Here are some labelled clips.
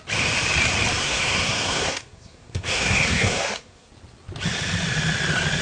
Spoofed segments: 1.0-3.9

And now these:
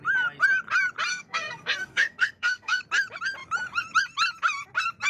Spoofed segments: 1.1-2.8

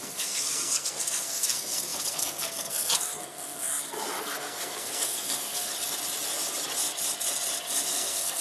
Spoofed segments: 0.0-5.7; 7.9-8.4

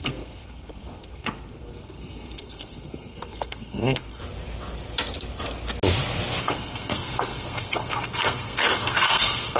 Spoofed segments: 0.0-4.2; 6.4-9.6

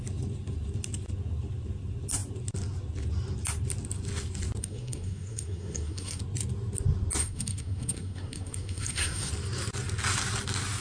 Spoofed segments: 4.6-6.2; 7.2-9.3